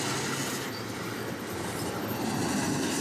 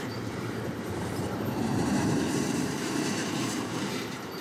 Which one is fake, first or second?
second